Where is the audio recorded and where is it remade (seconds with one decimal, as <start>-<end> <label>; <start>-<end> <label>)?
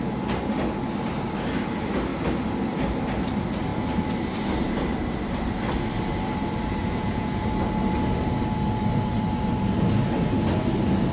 0.0-6.8 recorded; 6.8-7.5 remade; 7.5-11.1 recorded